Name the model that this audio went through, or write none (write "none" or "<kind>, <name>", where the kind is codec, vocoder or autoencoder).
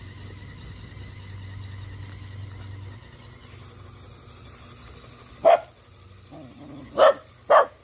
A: none